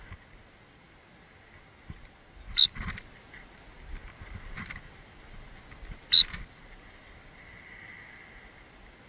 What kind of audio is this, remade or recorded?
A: recorded